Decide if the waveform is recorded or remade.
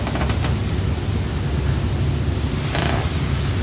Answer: recorded